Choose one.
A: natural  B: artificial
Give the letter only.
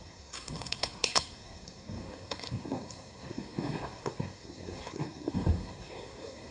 B